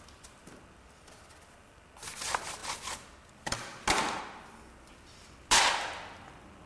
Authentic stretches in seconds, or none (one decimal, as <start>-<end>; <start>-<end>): 0.0-6.7

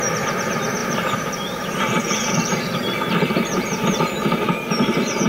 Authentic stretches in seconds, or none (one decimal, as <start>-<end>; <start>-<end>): 0.0-0.8; 4.0-5.3

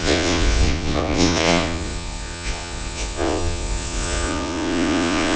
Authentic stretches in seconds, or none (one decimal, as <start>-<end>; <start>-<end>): none

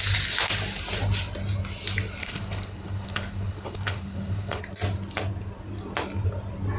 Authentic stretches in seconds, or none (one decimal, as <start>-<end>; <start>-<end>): 0.0-2.2; 4.6-6.8

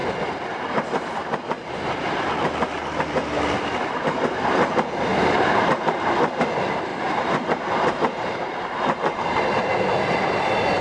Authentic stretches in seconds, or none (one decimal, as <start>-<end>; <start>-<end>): 0.0-5.1; 6.0-6.9; 8.5-10.8